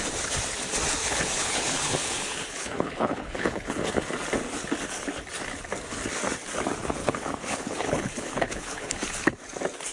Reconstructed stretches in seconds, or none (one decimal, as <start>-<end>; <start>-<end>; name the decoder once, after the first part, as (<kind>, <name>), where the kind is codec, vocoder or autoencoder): 1.0-3.9 (codec, HILCodec); 7.0-8.9